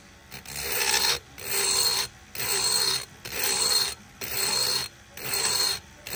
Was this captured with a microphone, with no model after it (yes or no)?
yes